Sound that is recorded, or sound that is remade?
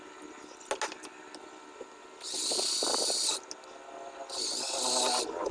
recorded